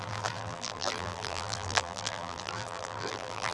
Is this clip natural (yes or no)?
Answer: no